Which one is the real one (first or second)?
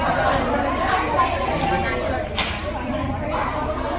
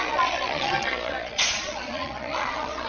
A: first